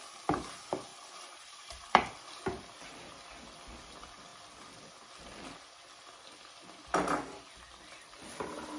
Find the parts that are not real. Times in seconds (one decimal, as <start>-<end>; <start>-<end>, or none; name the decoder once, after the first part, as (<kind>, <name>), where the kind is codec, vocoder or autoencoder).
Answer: 0.9-1.8 (vocoder, BigVGAN v2)